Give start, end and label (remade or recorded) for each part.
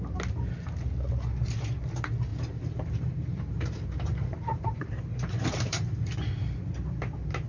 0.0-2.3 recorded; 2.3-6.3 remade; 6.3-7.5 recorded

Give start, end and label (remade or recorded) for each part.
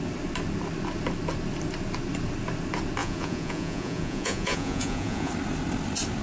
0.0-3.0 recorded; 3.0-5.3 remade; 5.3-6.2 recorded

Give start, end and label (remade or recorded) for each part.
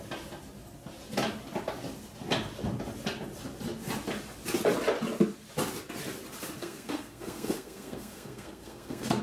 0.0-6.6 recorded; 6.6-9.2 remade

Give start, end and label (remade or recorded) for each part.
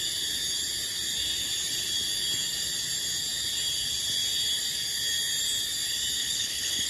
0.0-6.2 recorded; 6.2-6.9 remade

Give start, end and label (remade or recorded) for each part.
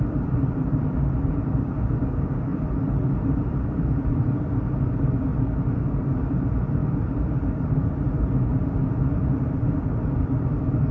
0.0-5.3 remade; 5.3-6.0 recorded; 6.0-10.9 remade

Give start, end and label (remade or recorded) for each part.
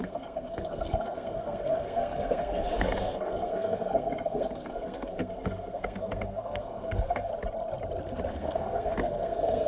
0.0-7.3 remade; 7.3-8.3 recorded; 8.3-9.7 remade